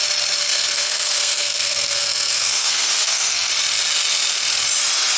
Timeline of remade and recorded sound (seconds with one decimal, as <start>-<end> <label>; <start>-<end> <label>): 0.0-0.4 recorded; 0.4-3.5 remade; 3.5-5.2 recorded